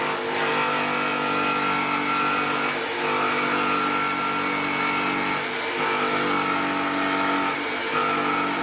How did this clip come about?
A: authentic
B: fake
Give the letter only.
A